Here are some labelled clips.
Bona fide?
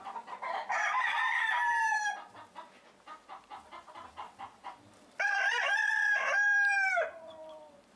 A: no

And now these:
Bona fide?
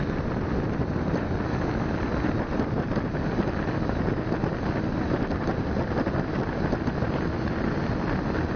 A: yes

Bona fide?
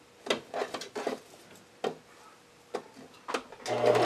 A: yes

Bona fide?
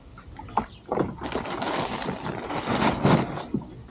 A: yes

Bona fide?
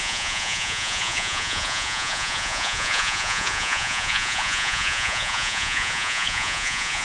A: no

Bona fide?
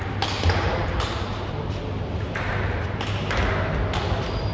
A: yes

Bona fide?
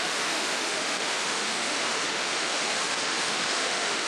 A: no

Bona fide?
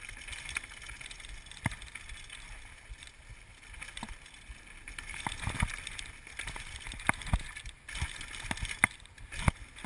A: yes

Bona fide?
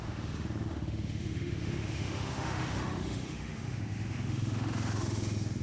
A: no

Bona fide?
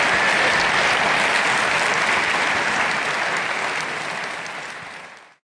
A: yes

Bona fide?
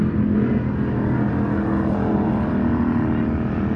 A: yes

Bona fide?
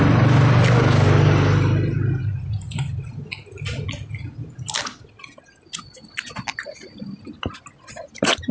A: yes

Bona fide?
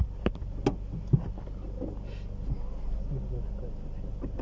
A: yes